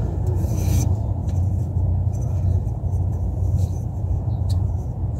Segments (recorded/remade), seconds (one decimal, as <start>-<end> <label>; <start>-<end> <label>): 0.0-5.2 recorded